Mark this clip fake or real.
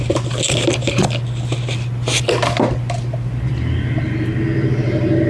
real